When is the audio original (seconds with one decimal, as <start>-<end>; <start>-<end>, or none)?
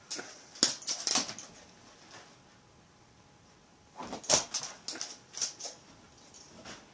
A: 0.0-6.9